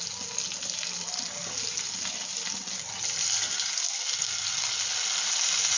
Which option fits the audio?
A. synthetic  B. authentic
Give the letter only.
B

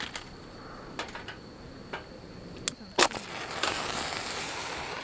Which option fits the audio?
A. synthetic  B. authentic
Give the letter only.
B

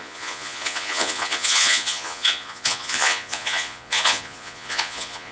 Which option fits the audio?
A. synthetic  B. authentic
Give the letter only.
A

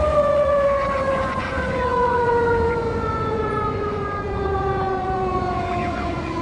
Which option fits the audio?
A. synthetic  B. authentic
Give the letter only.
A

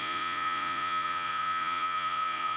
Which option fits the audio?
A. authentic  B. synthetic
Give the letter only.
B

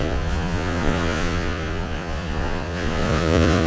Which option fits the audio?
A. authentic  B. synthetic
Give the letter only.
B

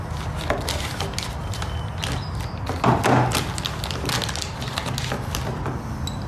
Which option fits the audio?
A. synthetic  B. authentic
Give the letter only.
B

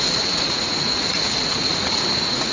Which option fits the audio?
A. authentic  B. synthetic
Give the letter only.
B